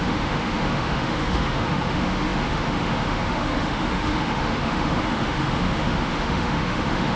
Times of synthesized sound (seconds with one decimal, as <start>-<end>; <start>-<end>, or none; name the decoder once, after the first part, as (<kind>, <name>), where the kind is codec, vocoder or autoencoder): 0.0-7.2 (autoencoder, DAC-VAE)